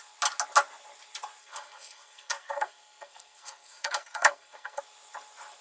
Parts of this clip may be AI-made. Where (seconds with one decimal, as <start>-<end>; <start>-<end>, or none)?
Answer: 1.4-4.8

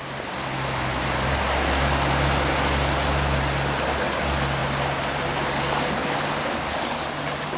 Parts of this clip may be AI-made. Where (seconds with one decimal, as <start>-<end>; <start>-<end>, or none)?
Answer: 0.5-1.4